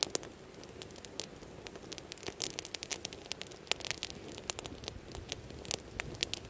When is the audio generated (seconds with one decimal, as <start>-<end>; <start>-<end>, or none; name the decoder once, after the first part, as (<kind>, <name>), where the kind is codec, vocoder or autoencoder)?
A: none